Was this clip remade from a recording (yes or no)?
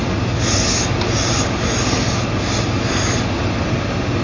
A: no